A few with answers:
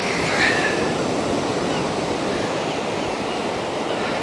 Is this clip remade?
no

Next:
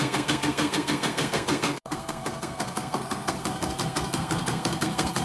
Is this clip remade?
yes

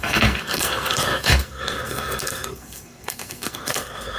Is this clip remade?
yes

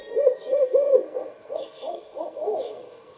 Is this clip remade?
yes